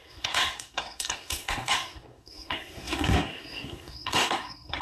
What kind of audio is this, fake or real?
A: fake